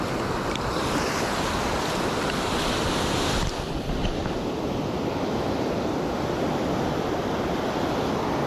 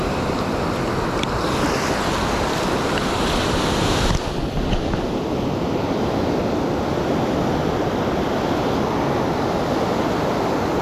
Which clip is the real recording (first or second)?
second